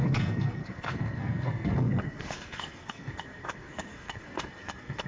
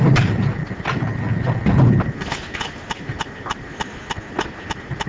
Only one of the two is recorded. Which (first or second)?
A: second